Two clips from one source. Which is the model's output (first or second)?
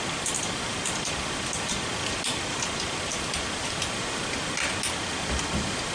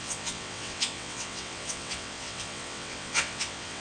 second